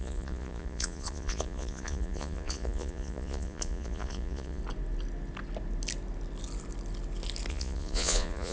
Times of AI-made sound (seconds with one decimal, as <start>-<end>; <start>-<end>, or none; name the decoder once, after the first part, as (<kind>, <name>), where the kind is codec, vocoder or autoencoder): 0.0-4.6 (vocoder, Vocos); 7.5-8.5